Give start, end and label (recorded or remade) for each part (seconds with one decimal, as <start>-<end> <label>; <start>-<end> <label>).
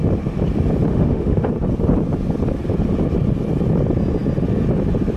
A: 0.0-0.9 recorded; 0.9-1.5 remade; 1.5-5.2 recorded